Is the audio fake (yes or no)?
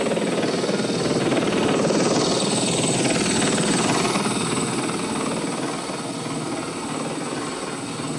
no